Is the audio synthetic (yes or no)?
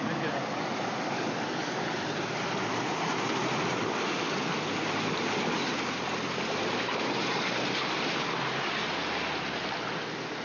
no